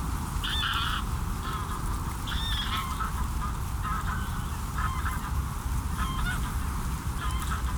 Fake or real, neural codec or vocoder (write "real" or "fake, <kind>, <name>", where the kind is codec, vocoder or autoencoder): real